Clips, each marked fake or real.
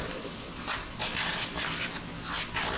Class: real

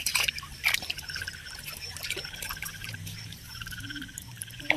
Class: fake